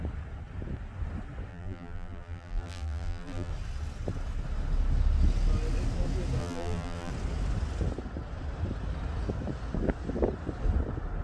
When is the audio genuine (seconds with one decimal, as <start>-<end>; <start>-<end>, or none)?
0.0-1.5; 3.5-6.4; 7.1-11.2